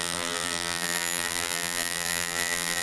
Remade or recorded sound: remade